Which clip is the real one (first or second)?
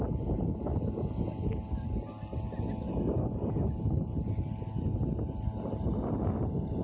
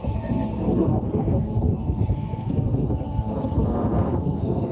first